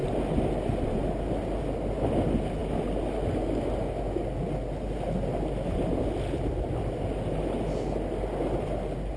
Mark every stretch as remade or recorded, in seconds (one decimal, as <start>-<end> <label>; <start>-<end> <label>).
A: 0.0-9.2 recorded